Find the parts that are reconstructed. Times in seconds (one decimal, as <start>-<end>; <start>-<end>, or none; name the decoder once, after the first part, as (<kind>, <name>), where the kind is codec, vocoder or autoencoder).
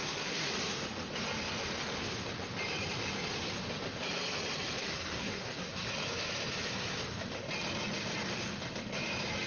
0.0-0.5 (codec, SNAC); 4.8-5.9